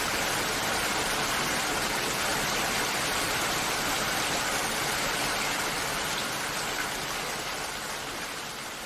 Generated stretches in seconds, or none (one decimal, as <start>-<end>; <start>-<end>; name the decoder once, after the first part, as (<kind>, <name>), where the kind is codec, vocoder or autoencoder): 2.3-4.9 (vocoder, BigVGAN v2)